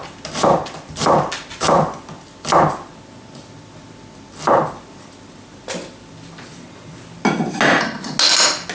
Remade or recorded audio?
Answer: recorded